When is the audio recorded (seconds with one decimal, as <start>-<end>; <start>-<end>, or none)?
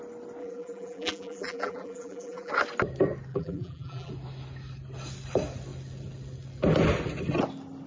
0.0-0.4; 2.5-3.3; 4.1-7.9